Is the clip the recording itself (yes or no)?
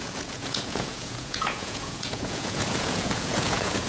no